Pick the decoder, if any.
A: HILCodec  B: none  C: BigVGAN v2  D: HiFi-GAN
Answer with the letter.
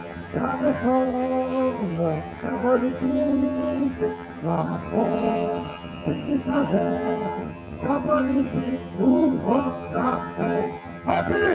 D